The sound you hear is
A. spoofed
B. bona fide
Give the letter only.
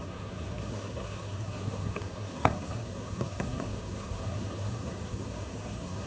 A